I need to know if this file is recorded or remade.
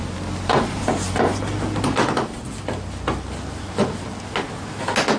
recorded